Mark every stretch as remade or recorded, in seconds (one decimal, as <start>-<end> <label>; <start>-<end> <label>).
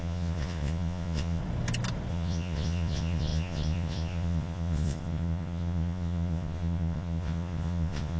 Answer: 0.0-1.4 remade; 1.4-2.1 recorded; 2.1-8.2 remade